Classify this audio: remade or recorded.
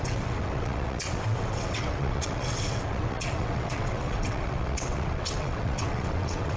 remade